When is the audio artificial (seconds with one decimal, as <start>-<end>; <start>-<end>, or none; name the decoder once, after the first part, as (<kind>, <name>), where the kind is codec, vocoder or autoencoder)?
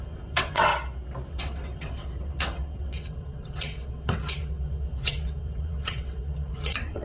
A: 0.0-0.7 (vocoder, WaveNeXt); 1.3-7.0